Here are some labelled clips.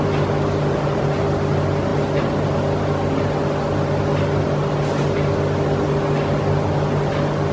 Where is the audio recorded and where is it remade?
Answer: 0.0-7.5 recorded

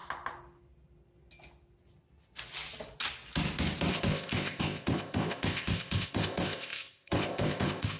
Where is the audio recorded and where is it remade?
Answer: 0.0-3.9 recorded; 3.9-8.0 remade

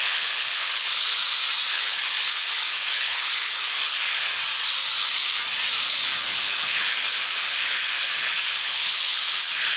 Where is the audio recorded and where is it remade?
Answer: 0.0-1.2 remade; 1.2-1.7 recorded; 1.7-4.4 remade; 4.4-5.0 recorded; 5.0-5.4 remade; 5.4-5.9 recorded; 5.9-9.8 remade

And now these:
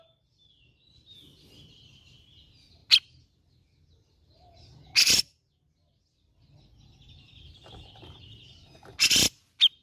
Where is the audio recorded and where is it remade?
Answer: 0.0-9.8 recorded

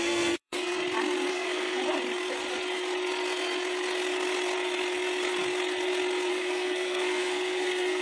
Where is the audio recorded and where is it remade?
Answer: 0.0-0.8 remade; 0.8-1.3 recorded; 1.3-1.8 remade; 1.8-6.3 recorded; 6.3-8.0 remade

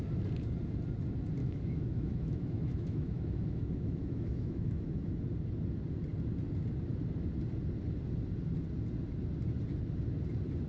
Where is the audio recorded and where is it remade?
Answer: 0.0-1.4 recorded; 1.4-5.1 remade; 5.1-10.7 recorded